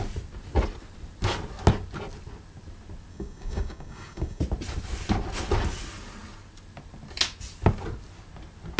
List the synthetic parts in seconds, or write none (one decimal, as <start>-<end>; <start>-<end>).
3.1-4.4